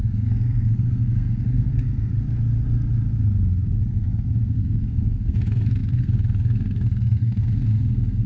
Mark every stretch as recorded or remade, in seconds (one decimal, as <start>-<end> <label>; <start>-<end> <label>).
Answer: 0.0-2.1 remade; 2.1-3.9 recorded; 3.9-8.3 remade